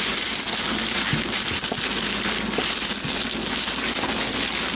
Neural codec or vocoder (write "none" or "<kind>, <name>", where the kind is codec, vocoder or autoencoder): none